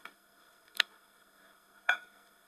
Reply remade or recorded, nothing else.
remade